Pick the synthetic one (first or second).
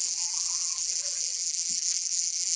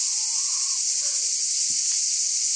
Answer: first